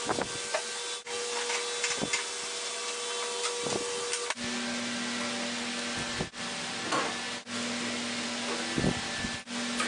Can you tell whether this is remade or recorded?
recorded